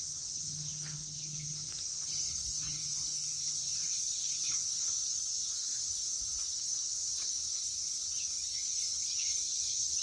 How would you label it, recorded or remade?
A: remade